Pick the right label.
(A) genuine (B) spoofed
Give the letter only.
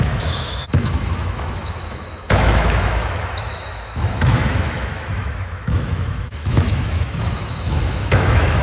B